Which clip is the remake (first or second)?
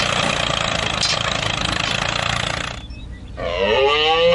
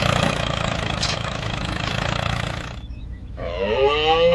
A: second